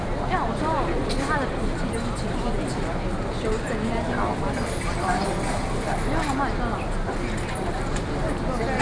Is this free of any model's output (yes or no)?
yes